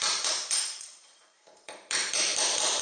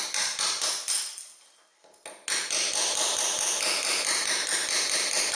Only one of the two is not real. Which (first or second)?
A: first